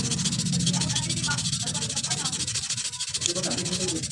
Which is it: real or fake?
real